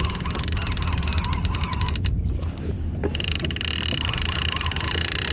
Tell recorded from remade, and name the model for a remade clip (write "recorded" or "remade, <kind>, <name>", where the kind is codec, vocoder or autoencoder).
remade, vocoder, BigVGAN v2